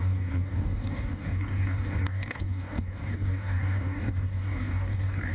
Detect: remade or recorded remade